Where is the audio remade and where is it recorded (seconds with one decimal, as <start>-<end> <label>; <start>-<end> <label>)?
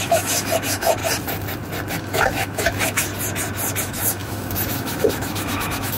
0.0-1.0 remade; 1.0-1.9 recorded; 1.9-3.1 remade; 3.1-3.8 recorded; 3.8-6.0 remade